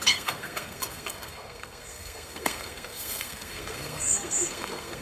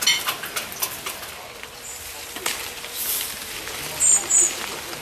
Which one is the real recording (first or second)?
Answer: second